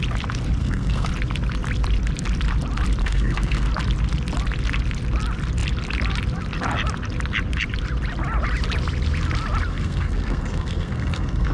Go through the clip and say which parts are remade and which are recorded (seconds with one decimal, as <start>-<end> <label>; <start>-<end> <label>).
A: 0.0-0.6 recorded; 0.6-1.1 remade; 1.1-3.0 recorded; 3.0-3.7 remade; 3.7-9.7 recorded; 9.7-11.5 remade